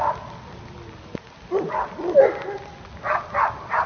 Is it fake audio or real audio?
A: real